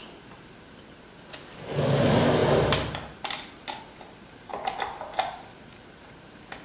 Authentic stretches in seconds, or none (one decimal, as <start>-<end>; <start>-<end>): 0.0-6.6